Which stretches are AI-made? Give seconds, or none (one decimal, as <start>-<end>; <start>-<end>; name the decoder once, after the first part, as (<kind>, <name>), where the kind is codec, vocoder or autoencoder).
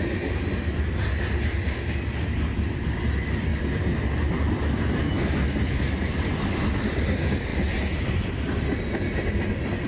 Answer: none